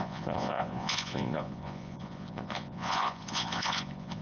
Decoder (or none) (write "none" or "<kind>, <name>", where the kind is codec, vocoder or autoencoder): vocoder, Vocos